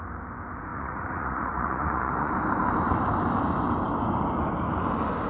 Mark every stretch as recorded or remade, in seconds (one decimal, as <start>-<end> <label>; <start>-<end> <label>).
0.0-0.7 recorded; 0.7-2.3 remade; 2.3-5.3 recorded